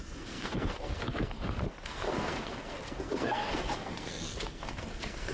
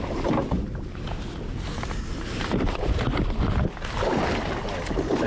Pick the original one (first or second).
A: second